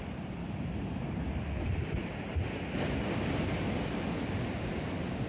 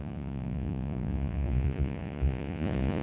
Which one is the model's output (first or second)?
second